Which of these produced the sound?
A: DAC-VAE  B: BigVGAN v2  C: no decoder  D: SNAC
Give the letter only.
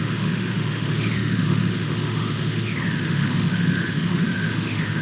A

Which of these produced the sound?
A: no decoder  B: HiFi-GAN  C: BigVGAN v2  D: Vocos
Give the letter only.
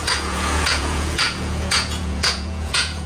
D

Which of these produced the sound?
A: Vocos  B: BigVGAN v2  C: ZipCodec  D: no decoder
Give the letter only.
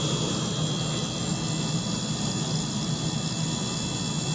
D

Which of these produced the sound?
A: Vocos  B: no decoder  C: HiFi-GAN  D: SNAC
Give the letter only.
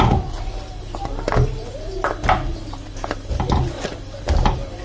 B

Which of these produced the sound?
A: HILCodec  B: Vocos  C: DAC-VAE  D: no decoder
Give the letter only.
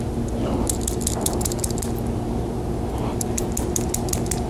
D